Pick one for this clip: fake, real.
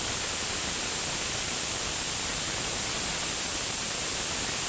real